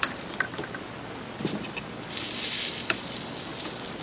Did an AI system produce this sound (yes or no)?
no